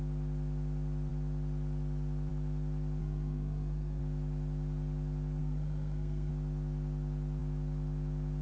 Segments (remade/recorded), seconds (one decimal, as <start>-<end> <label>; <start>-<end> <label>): 0.0-3.0 recorded; 3.0-4.0 remade; 4.0-5.4 recorded; 5.4-6.3 remade; 6.3-8.4 recorded